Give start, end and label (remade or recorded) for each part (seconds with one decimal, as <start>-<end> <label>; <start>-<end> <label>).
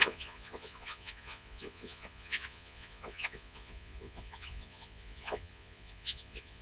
0.0-6.6 remade